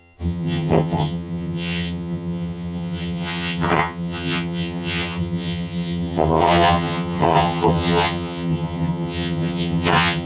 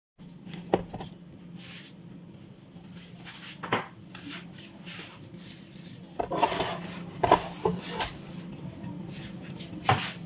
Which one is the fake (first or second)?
first